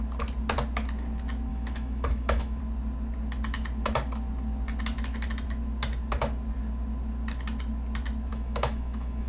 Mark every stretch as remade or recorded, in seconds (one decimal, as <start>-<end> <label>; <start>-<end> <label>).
0.0-1.5 recorded; 1.5-2.6 remade; 2.6-8.3 recorded; 8.3-9.3 remade

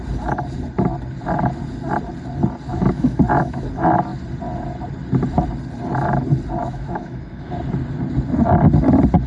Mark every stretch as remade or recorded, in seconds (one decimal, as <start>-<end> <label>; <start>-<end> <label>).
0.0-2.7 recorded; 2.7-3.6 remade; 3.6-6.6 recorded; 6.6-7.5 remade; 7.5-9.3 recorded